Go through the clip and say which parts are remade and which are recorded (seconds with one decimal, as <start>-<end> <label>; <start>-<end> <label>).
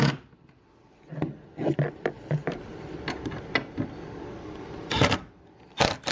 0.0-6.1 recorded